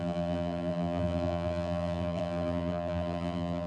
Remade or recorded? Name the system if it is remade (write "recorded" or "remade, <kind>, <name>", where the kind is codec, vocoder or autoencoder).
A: remade, vocoder, BigVGAN v2